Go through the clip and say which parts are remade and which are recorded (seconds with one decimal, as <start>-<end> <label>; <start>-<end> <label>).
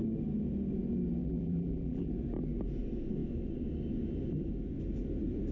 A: 0.0-1.2 recorded; 1.2-2.1 remade; 2.1-5.5 recorded